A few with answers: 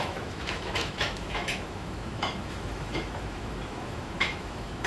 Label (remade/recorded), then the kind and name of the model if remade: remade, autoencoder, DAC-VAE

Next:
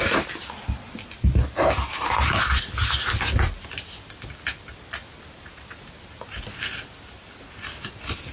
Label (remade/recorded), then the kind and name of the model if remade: recorded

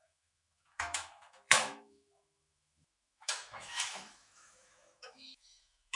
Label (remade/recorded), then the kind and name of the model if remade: remade, autoencoder, DAC-VAE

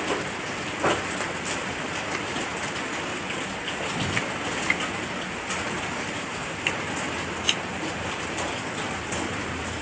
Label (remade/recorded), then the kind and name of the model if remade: recorded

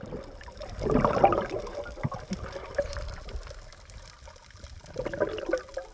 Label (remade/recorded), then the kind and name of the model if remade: recorded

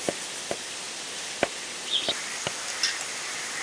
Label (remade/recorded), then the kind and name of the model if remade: recorded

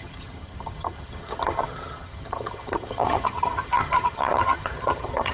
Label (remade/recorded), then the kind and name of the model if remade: remade, vocoder, HiFi-GAN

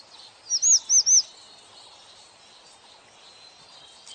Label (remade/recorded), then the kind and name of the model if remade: recorded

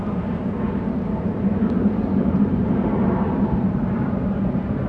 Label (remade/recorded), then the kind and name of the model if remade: remade, vocoder, BigVGAN v2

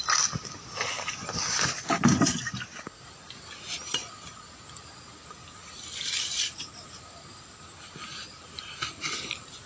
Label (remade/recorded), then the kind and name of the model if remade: recorded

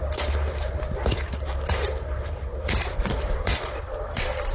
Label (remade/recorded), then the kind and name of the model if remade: remade, vocoder, BigVGAN v2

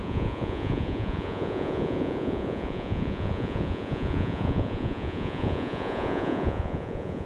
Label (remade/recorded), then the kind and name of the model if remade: remade, vocoder, Vocos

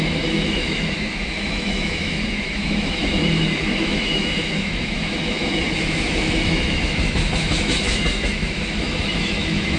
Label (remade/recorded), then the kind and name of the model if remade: remade, autoencoder, DAC-VAE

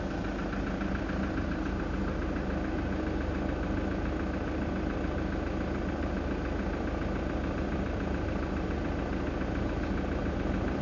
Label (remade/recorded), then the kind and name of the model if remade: recorded